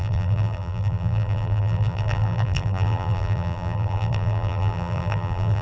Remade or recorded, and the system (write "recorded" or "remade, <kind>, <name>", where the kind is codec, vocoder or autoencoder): remade, vocoder, BigVGAN v2